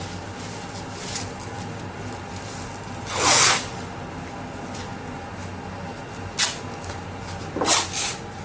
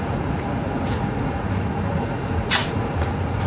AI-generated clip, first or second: second